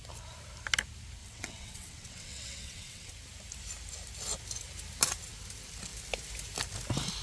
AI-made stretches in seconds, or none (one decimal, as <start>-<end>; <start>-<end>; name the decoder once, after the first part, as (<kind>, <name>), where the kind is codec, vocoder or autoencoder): 1.2-3.1 (vocoder, WaveNeXt)